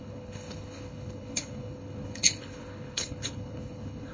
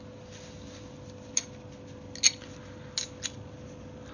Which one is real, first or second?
second